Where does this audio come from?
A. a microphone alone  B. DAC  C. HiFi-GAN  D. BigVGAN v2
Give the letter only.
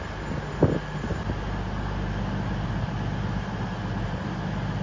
A